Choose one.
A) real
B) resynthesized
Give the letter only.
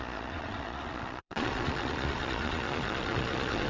B